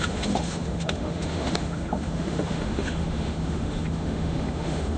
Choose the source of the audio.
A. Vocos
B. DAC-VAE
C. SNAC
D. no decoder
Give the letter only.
B